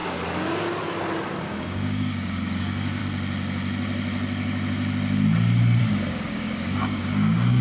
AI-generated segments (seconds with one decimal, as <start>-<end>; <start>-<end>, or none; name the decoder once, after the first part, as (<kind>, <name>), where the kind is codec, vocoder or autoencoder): 1.4-3.0 (codec, DAC); 5.8-7.6